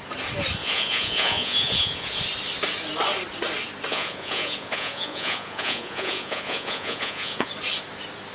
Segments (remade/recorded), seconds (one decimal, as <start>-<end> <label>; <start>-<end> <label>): 0.0-0.6 recorded; 0.6-2.2 remade; 2.2-3.9 recorded; 3.9-7.5 remade; 7.5-8.3 recorded